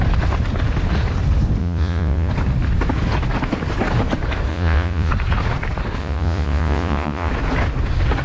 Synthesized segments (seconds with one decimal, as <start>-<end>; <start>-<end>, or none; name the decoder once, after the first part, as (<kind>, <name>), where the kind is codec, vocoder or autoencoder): 1.6-2.3 (vocoder, Vocos); 4.5-5.1; 6.0-7.3